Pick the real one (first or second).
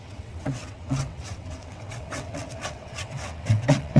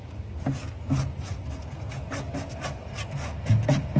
second